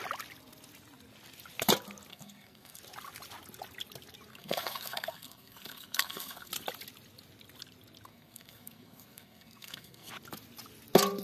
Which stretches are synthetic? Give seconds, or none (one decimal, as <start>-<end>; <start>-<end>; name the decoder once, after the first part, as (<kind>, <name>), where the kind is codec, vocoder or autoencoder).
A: 2.1-2.8 (codec, SNAC); 4.3-6.5; 8.1-10.1